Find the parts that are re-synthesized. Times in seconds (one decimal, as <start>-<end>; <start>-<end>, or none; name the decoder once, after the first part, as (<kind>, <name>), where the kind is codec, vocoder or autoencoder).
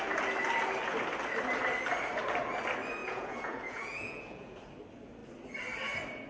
3.0-4.6 (vocoder, Vocos)